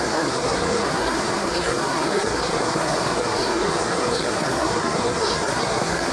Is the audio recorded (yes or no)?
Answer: no